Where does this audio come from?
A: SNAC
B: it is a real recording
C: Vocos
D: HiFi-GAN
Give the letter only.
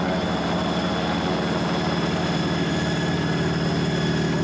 B